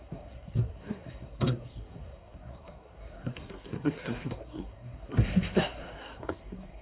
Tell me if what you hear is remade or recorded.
remade